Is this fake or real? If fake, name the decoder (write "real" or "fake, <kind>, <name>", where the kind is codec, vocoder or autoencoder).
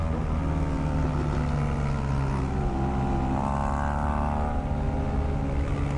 real